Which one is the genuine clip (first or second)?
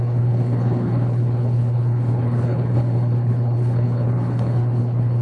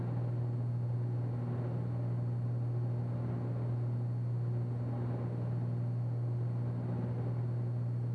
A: second